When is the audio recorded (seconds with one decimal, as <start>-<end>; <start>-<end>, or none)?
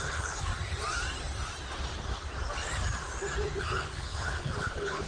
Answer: 0.5-3.6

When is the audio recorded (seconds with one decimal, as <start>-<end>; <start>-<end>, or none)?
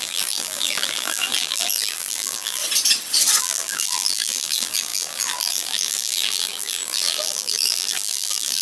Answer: 2.6-3.4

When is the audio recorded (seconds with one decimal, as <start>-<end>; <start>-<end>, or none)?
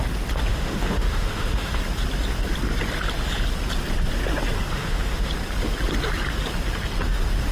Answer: 0.0-0.5; 1.7-4.7; 5.3-7.5